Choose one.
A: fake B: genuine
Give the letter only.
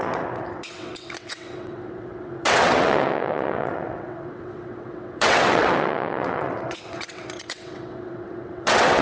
A